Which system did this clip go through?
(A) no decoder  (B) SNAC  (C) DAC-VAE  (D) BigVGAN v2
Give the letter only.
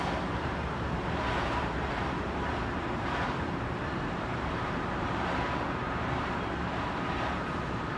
D